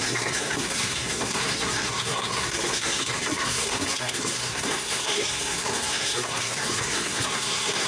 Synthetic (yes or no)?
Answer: yes